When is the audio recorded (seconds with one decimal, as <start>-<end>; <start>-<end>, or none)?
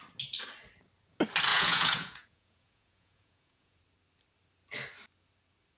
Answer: 0.0-1.5; 3.8-5.8